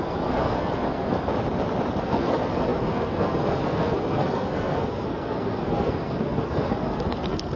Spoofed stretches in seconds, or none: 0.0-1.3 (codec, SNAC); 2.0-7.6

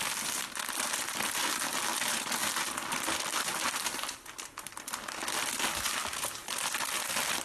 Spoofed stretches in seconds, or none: none

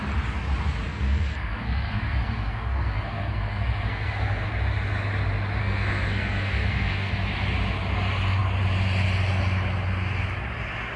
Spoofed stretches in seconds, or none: 0.9-4.5 (codec, SNAC); 5.6-7.1

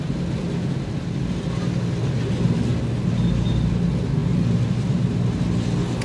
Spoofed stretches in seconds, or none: none

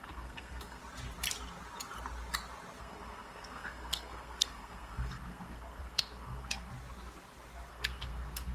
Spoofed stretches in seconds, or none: 0.0-0.8 (codec, SNAC); 2.8-6.7; 7.7-8.5

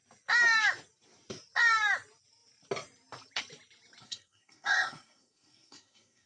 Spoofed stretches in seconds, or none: 4.0-6.3 (codec, SNAC)

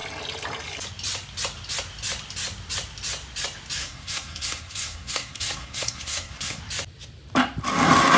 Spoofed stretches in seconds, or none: 3.8-6.6 (codec, SNAC)

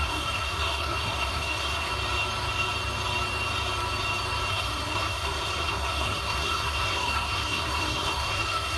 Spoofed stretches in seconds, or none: 0.0-1.9 (codec, SNAC); 4.5-8.8